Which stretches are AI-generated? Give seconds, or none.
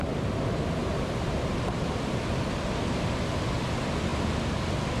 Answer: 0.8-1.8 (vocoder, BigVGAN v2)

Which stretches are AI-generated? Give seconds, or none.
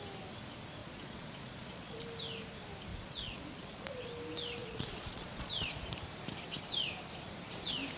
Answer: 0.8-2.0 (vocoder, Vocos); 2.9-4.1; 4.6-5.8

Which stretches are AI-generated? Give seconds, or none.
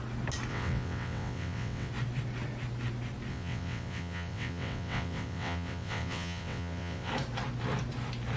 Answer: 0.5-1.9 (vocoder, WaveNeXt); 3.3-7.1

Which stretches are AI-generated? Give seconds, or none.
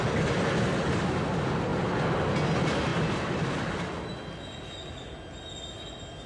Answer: none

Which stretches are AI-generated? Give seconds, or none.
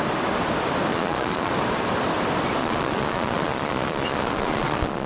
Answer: 0.9-1.5 (vocoder, Vocos); 2.6-5.1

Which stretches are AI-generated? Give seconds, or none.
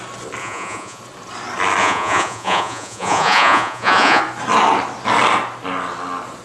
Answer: 0.4-1.0 (vocoder, Vocos); 1.8-4.2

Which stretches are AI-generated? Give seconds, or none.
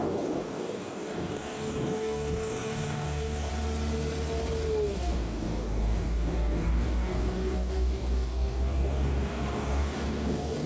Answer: 0.0-3.5 (codec, DAC); 4.9-10.7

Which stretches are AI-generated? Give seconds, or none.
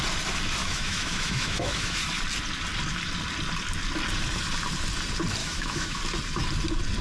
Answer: 0.6-2.0 (autoencoder, DAC-VAE); 5.4-6.0